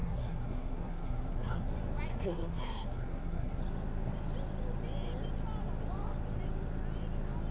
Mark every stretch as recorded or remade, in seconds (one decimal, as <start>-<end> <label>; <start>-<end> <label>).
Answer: 0.0-1.7 remade; 1.7-2.1 recorded; 2.1-3.6 remade; 3.6-7.5 recorded